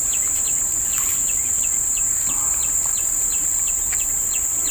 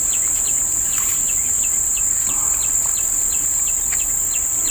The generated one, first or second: first